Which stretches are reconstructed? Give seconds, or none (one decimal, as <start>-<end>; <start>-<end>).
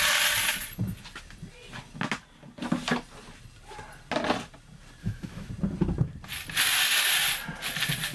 5.0-5.5